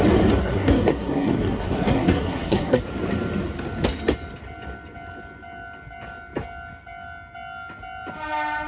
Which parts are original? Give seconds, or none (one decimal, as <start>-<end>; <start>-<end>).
0.0-0.4; 2.8-8.7